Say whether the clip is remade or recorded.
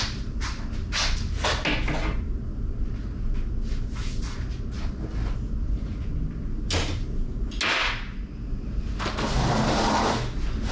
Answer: recorded